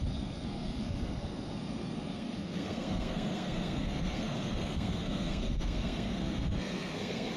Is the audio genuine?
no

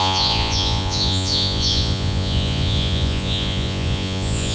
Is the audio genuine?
no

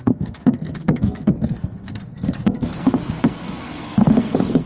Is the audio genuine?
no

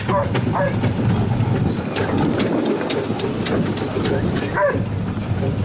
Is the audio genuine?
no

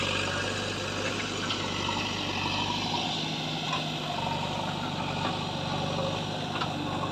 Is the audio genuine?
yes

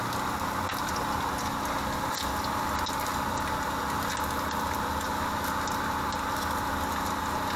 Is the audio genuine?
yes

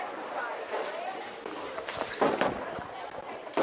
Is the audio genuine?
yes